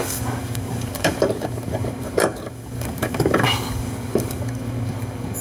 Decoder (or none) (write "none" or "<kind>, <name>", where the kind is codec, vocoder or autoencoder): codec, DAC